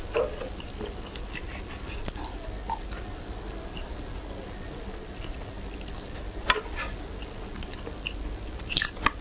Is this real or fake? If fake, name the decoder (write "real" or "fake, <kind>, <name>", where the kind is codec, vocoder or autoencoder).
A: real